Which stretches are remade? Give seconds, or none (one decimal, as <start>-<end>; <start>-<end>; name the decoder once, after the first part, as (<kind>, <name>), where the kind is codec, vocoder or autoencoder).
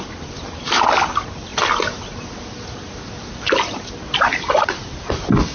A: none